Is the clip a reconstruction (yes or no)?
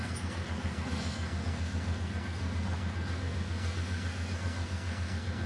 yes